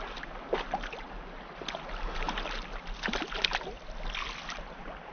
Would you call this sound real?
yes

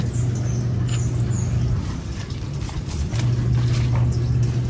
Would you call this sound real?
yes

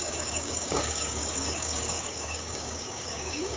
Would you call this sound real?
no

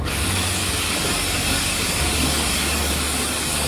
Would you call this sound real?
no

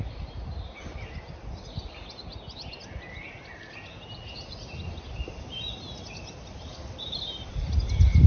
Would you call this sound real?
yes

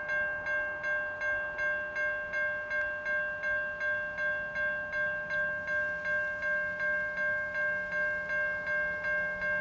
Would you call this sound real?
yes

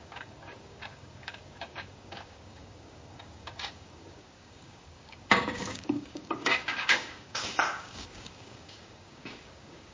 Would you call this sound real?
no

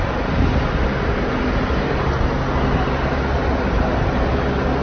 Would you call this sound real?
yes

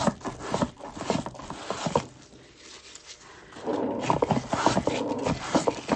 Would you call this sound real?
yes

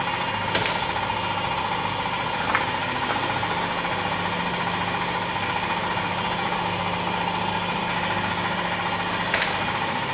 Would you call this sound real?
yes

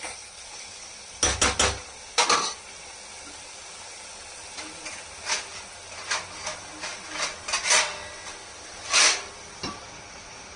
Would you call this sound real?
yes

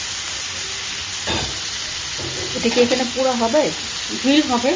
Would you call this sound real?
yes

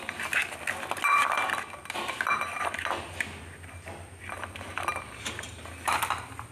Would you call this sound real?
yes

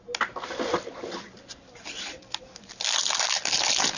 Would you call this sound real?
yes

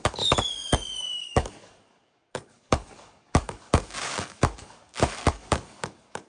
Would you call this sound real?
no